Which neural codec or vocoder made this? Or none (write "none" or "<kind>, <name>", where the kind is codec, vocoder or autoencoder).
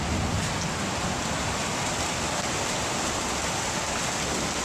none